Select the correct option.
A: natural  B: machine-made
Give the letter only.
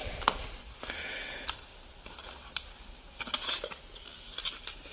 A